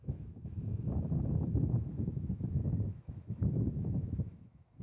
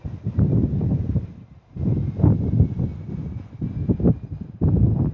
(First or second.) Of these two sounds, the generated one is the first